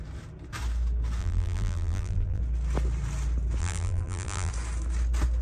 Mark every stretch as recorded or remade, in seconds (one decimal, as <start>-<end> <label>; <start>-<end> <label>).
0.0-1.2 recorded; 1.2-2.4 remade; 2.4-3.6 recorded; 3.6-4.5 remade; 4.5-5.4 recorded